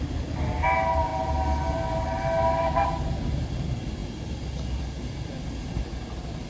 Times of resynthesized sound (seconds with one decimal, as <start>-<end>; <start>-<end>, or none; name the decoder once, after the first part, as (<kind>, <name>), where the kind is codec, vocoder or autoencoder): none